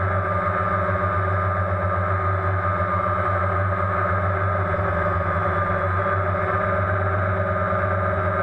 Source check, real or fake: real